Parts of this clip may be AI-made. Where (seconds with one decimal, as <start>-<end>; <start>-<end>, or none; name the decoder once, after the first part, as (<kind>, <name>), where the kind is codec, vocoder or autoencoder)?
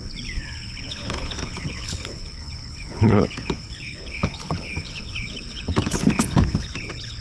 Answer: 0.0-7.2 (codec, HILCodec)